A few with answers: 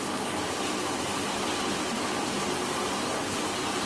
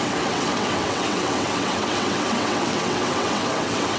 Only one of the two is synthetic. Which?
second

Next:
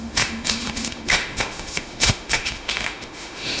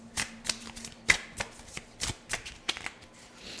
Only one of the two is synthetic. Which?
first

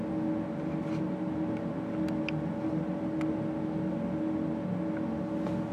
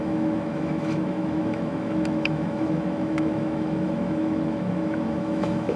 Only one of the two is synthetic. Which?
second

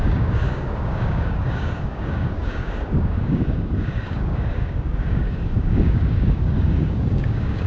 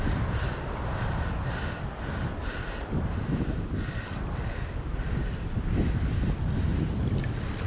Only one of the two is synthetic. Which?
first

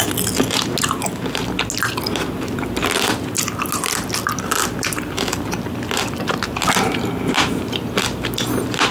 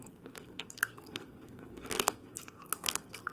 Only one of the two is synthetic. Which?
second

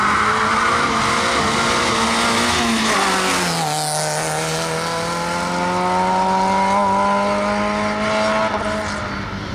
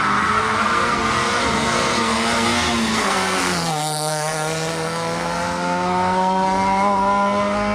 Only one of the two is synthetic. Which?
second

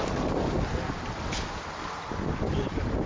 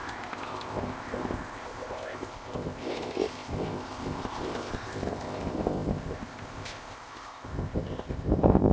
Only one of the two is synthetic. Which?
second